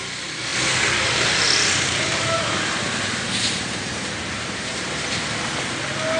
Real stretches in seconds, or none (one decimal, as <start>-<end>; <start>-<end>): 0.0-6.2